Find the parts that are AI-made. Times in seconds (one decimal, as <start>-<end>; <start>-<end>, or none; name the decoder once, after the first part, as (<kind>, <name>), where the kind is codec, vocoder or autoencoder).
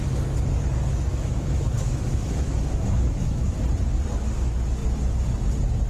0.9-3.6 (autoencoder, DAC-VAE)